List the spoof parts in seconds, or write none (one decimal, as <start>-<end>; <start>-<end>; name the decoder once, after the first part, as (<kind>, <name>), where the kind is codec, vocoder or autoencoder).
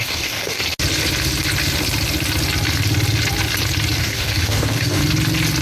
0.0-0.6 (codec, DAC); 4.0-5.0